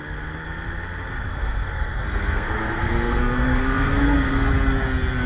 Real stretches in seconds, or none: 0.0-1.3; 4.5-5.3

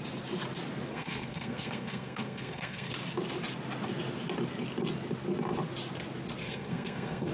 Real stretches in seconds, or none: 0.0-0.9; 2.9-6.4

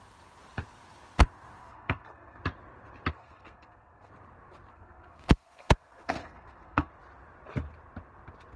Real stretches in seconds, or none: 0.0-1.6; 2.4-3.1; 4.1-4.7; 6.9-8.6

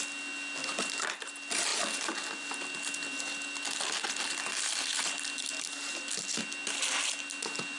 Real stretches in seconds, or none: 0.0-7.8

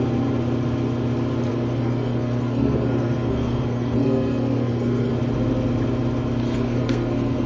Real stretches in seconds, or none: 0.0-1.5; 5.1-6.4

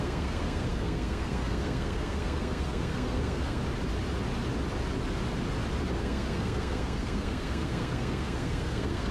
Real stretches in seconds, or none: 3.6-6.0

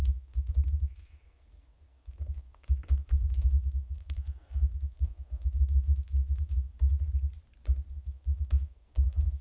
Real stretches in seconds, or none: 6.7-7.9

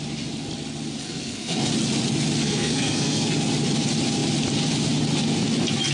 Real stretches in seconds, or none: 0.0-1.0; 1.7-2.4; 3.3-5.9